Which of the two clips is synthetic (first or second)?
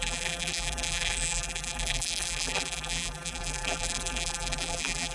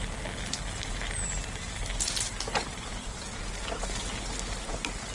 first